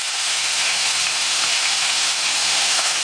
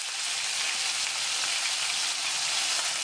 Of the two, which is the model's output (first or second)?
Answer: first